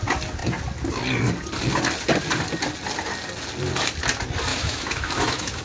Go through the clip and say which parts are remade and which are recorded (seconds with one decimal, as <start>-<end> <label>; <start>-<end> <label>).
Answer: 0.0-4.5 recorded; 4.5-5.6 remade